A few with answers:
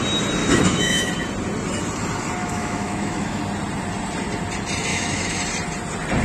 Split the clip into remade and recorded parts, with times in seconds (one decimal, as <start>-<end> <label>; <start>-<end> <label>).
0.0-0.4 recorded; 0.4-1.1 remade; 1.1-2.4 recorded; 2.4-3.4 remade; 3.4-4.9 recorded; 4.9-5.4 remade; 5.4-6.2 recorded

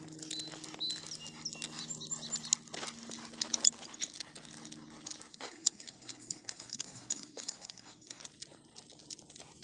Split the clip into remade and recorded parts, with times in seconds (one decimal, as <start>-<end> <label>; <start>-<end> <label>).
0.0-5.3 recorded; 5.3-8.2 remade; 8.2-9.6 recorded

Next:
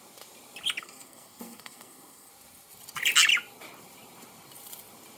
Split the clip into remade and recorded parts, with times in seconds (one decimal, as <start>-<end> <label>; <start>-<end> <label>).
0.0-0.8 recorded; 0.8-2.3 remade; 2.3-5.2 recorded

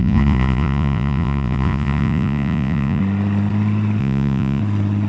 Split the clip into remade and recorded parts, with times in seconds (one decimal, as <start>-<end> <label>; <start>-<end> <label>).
0.0-3.0 remade; 3.0-4.0 recorded; 4.0-4.6 remade; 4.6-5.1 recorded

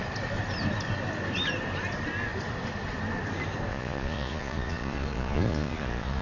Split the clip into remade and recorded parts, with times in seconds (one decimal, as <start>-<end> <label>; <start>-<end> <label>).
0.0-3.7 recorded; 3.7-6.2 remade

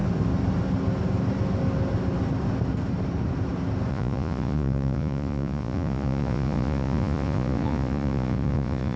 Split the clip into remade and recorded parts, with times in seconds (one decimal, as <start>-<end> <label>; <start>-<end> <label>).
0.0-3.9 recorded; 3.9-9.0 remade

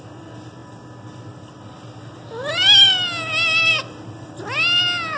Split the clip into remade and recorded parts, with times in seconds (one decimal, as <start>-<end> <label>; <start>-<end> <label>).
0.0-5.2 recorded

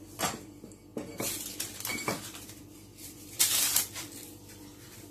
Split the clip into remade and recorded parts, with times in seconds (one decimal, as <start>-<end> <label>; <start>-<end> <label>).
0.0-1.9 recorded; 1.9-5.1 remade